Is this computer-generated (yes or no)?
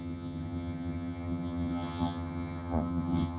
yes